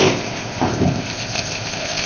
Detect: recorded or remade remade